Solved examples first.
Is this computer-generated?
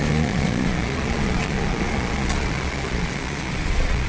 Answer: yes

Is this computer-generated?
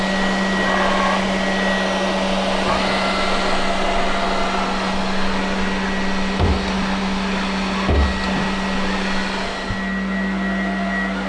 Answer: no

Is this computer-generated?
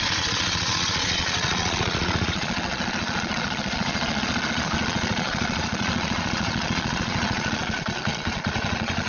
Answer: yes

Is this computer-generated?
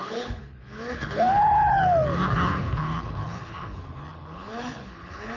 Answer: yes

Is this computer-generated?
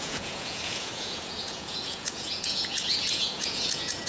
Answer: yes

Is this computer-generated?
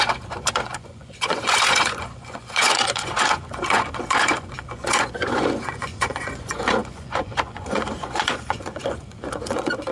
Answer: yes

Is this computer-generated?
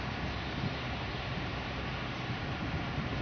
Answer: yes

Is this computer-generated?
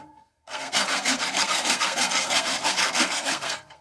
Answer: yes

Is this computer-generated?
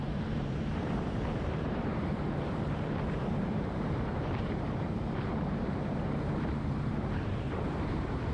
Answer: yes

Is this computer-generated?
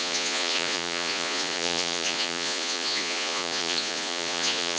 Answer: yes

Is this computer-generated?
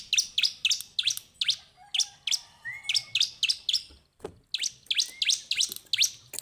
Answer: no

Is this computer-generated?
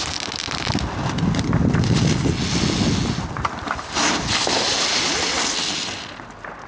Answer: no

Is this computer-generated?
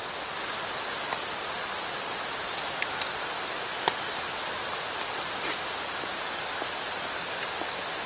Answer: no